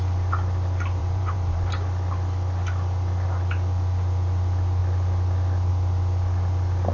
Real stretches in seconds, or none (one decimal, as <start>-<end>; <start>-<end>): 0.0-1.0; 1.6-6.9